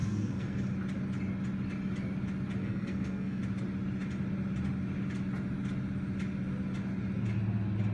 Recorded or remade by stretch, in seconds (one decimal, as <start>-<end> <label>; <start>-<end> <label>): 0.0-0.6 remade; 0.6-2.6 recorded; 2.6-3.4 remade; 3.4-7.9 recorded